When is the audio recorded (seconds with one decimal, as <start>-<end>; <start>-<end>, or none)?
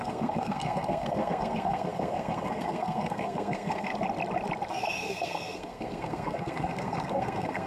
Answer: 3.9-4.7